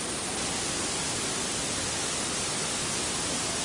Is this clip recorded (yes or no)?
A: yes